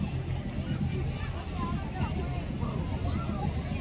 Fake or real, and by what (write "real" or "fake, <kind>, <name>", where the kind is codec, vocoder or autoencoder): real